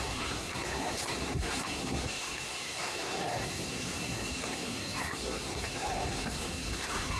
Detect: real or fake fake